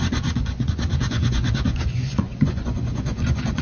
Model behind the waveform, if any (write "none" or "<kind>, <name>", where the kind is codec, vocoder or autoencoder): vocoder, Vocos